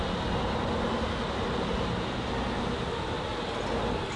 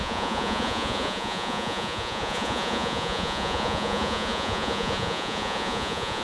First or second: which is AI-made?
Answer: second